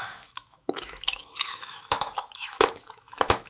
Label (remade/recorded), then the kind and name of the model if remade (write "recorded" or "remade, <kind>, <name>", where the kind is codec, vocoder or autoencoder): remade, autoencoder, DAC-VAE